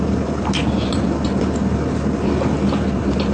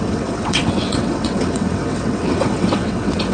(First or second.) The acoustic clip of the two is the first